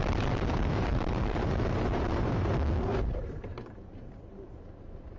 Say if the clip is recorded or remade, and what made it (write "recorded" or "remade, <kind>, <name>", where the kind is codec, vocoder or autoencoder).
remade, vocoder, BigVGAN v2